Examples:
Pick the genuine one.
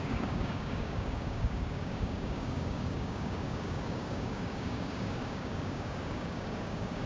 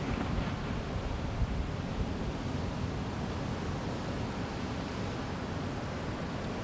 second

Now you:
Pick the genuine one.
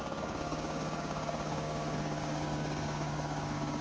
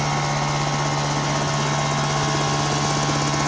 second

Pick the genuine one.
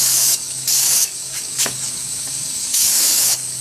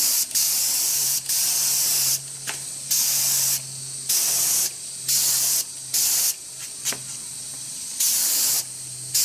second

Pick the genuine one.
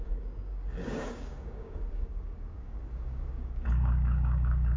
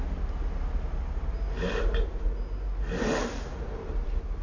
second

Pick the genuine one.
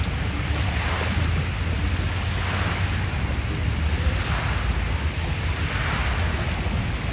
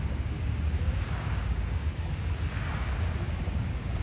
first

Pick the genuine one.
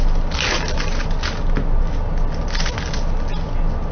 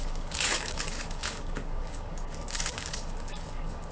first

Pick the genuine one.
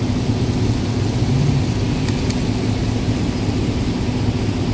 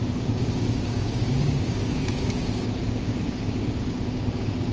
first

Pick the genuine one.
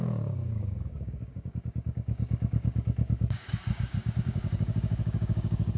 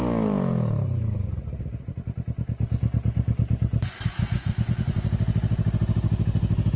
second